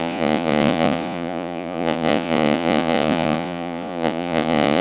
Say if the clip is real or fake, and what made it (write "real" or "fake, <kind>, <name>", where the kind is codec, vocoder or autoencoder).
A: fake, vocoder, Vocos